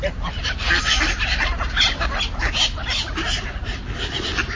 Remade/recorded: recorded